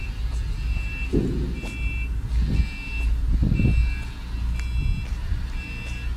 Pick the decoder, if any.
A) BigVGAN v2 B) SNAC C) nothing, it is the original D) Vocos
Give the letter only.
C